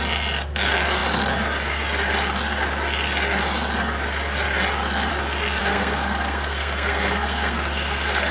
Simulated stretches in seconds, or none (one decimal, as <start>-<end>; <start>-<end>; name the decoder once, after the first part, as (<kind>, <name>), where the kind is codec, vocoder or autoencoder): 5.6-8.3 (codec, SNAC)